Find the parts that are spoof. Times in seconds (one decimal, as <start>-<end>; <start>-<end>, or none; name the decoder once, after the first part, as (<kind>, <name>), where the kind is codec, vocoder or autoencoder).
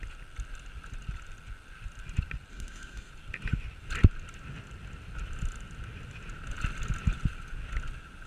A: 2.5-3.1 (codec, SNAC)